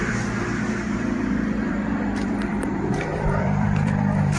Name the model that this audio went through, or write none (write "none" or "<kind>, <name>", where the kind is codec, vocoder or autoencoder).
vocoder, BigVGAN v2